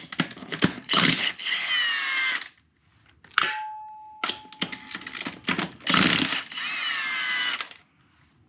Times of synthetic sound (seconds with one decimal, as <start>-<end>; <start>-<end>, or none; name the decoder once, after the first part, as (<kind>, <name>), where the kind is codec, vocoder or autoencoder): 0.4-1.7 (codec, HILCodec)